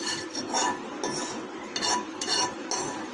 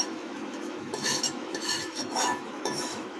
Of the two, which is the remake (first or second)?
second